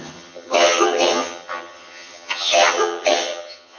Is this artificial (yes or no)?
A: yes